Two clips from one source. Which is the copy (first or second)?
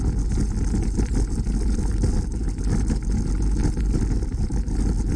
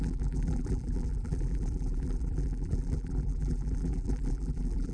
second